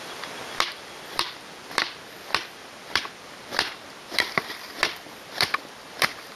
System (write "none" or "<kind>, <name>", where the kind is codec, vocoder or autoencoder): vocoder, BigVGAN v2